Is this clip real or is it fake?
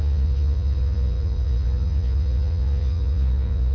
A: fake